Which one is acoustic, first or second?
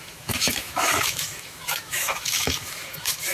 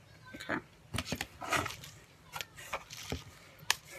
second